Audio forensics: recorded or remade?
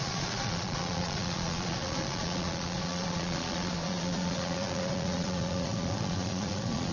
remade